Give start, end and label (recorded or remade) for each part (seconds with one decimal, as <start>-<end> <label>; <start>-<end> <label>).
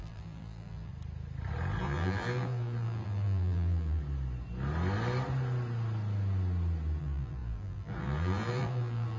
0.0-0.9 remade; 0.9-1.8 recorded; 1.8-4.0 remade; 4.0-7.0 recorded; 7.0-9.2 remade